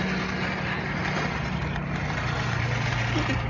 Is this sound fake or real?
real